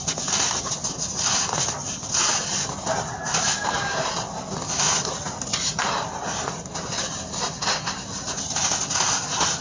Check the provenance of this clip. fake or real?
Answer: real